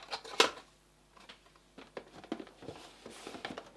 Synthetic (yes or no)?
no